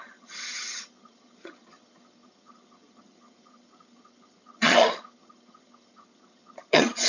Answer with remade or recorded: remade